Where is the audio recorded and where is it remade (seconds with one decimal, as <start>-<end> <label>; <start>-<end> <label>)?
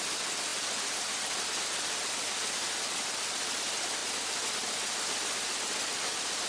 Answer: 0.0-6.5 recorded